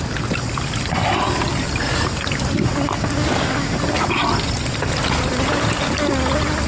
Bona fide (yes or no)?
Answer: yes